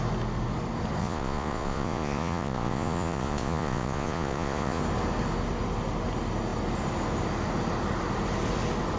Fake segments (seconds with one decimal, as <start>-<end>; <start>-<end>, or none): 1.0-4.8